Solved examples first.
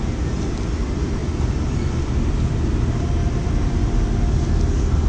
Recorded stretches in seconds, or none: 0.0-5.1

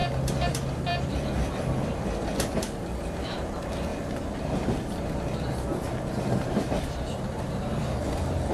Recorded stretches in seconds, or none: 2.0-8.5

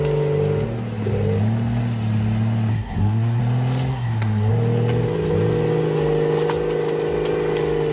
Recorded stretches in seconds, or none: 0.0-2.7; 3.4-3.9; 4.5-7.9